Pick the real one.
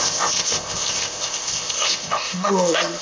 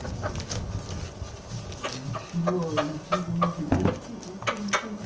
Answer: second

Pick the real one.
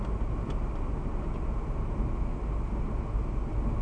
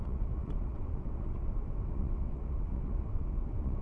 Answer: first